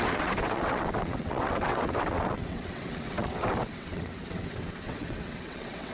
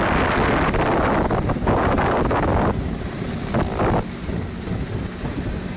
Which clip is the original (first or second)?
second